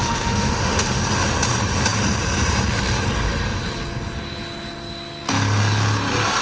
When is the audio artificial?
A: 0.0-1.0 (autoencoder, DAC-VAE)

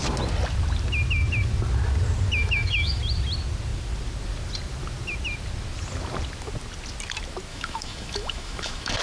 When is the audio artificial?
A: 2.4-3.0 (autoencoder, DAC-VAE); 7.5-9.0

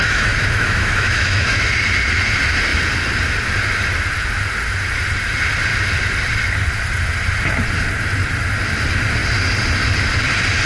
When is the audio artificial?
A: 0.0-1.6 (autoencoder, DAC-VAE)

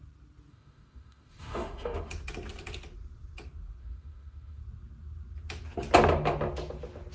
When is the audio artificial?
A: 0.5-2.1 (autoencoder, DAC-VAE); 3.8-4.6

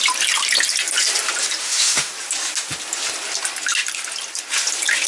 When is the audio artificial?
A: 1.6-2.1 (autoencoder, DAC-VAE)

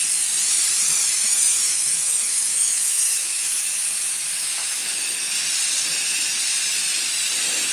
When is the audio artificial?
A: 1.1-4.9 (autoencoder, DAC-VAE)

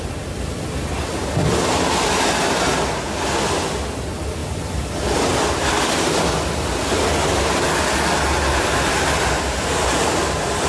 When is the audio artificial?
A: none

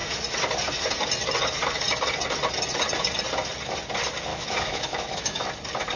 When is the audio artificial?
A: 4.3-5.5 (autoencoder, DAC-VAE)